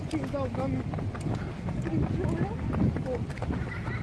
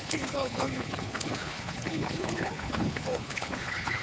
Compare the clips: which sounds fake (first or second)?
second